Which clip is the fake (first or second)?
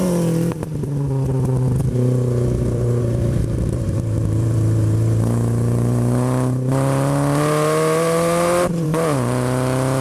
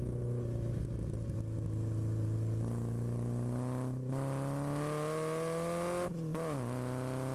first